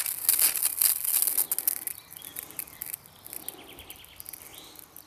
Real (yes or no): yes